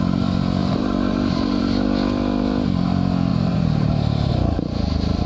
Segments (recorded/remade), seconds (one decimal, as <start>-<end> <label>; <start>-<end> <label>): 0.0-0.6 recorded; 0.6-1.6 remade; 1.6-3.3 recorded; 3.3-4.3 remade; 4.3-5.3 recorded